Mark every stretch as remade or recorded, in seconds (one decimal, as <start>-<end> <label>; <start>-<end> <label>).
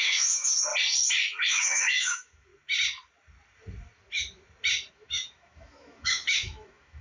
0.0-0.7 remade; 0.7-1.4 recorded; 1.4-2.5 remade; 2.5-4.9 recorded; 4.9-7.0 remade